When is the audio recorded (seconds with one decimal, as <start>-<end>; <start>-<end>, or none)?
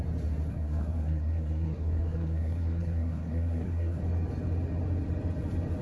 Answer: 0.0-0.5; 4.0-5.8